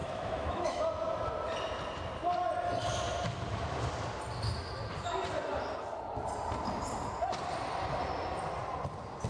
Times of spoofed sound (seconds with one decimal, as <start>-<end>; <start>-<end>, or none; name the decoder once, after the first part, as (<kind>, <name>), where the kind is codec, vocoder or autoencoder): 0.0-0.8 (autoencoder, DAC-VAE)